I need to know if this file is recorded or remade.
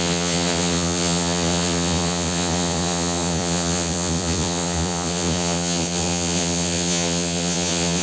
remade